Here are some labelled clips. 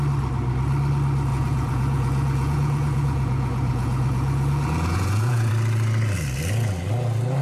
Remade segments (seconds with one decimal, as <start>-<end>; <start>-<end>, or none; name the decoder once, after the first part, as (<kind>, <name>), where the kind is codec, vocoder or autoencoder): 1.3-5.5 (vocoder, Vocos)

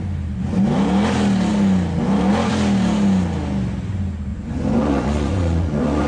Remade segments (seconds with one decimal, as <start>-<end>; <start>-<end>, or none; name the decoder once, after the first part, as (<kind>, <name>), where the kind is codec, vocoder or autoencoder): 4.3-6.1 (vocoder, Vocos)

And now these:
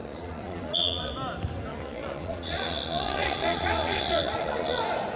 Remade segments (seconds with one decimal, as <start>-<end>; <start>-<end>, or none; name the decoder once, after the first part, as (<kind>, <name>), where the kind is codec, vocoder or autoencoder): 0.0-1.1 (vocoder, Vocos); 1.7-4.8